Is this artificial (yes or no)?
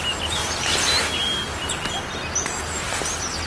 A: no